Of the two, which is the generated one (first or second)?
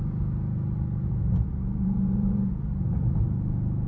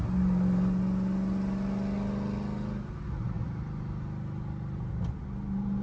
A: first